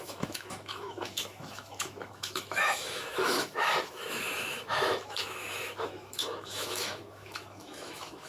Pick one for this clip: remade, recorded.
remade